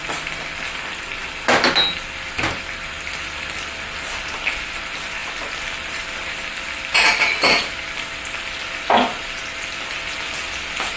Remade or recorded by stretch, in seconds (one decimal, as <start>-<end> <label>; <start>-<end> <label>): 0.0-11.0 recorded